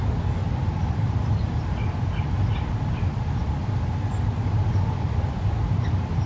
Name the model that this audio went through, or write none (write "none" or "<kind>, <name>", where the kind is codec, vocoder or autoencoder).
none